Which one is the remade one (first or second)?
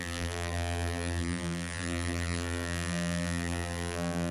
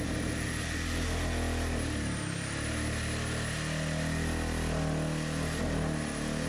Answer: first